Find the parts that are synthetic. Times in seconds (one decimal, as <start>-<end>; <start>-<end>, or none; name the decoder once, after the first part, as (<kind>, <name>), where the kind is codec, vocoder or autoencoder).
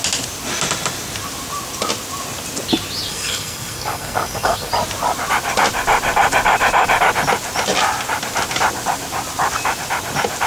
3.1-4.7 (codec, SNAC)